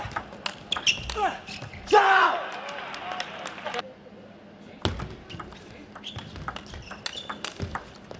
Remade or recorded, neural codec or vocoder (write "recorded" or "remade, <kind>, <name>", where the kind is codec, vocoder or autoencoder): recorded